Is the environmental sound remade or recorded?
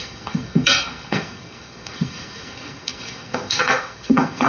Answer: remade